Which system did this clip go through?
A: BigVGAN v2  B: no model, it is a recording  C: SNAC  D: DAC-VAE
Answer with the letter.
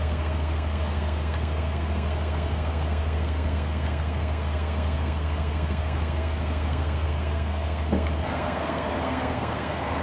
C